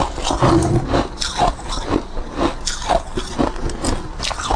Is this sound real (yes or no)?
yes